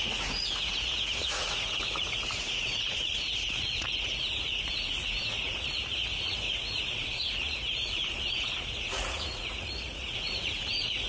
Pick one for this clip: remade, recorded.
remade